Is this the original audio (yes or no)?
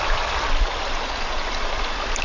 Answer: yes